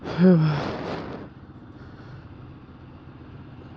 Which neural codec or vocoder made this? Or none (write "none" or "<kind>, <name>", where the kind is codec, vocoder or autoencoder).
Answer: none